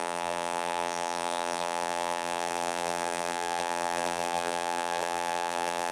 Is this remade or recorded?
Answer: remade